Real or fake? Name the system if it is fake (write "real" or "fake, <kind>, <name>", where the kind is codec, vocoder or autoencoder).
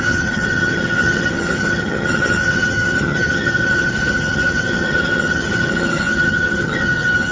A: fake, vocoder, HiFi-GAN